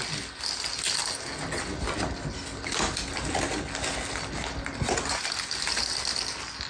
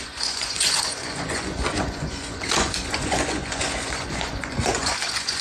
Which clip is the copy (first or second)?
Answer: second